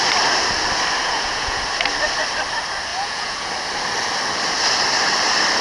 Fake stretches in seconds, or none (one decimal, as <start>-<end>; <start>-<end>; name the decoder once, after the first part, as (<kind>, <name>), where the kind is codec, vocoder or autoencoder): 1.0-1.6 (vocoder, Vocos); 2.9-3.5